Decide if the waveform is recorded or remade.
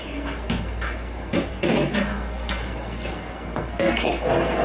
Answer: remade